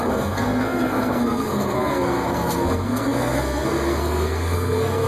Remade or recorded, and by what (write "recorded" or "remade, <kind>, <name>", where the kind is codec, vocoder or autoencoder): remade, codec, SNAC